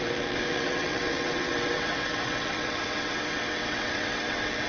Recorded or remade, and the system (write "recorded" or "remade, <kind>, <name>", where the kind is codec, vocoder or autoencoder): remade, vocoder, WaveNeXt